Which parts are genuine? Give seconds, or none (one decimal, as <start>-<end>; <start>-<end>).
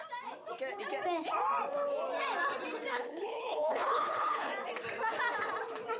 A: 0.0-2.9; 4.5-6.0